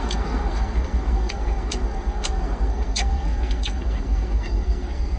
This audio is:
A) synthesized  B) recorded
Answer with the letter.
A